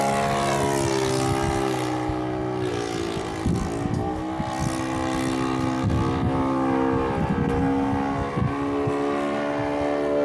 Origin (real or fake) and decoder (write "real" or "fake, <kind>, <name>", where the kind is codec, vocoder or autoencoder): real